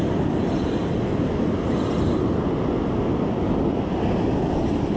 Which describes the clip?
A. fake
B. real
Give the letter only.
B